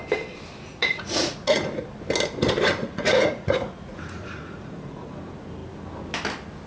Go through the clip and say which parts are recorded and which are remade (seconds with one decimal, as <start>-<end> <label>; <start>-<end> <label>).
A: 0.0-0.7 recorded; 0.7-1.6 remade; 1.6-2.8 recorded; 2.8-5.1 remade; 5.1-6.7 recorded